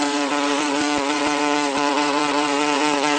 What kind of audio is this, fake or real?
fake